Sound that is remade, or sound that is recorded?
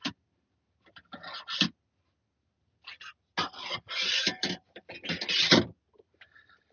recorded